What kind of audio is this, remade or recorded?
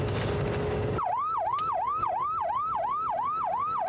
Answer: recorded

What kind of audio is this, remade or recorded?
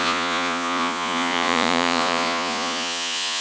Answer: remade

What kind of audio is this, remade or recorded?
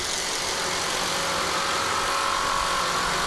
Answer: recorded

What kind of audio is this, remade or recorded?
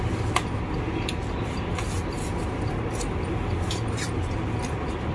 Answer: recorded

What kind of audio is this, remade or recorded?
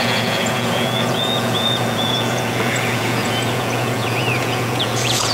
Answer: remade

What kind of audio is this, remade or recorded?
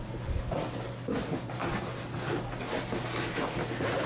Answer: recorded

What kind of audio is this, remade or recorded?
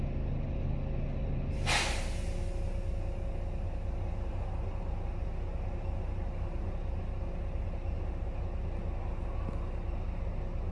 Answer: recorded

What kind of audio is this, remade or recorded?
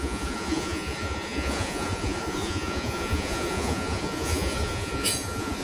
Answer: remade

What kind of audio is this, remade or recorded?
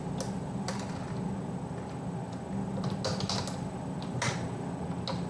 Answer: recorded